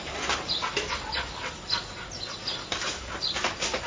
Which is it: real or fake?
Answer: real